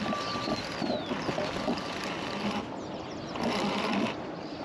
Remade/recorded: recorded